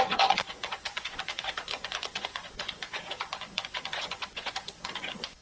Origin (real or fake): fake